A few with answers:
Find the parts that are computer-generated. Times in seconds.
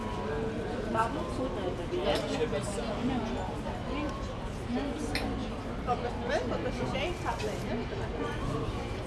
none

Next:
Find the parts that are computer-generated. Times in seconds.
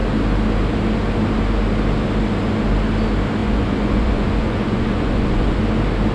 3.4-5.6 (vocoder, Vocos)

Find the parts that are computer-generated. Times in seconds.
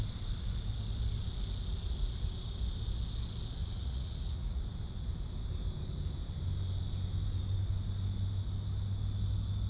3.6-4.6 (vocoder, Vocos)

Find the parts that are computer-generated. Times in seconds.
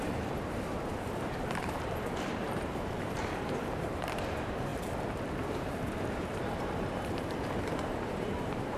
0.0-8.8 (vocoder, BigVGAN v2)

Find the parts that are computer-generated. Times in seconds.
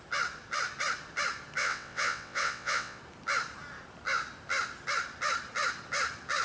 1.6-3.0 (vocoder, WaveNeXt)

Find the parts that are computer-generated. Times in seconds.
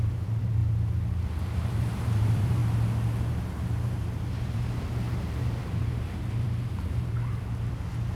0.0-0.6 (vocoder, BigVGAN v2); 1.3-2.6; 3.3-8.2